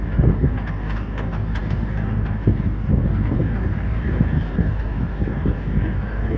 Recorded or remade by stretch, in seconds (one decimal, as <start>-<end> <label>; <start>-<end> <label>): 0.0-6.4 remade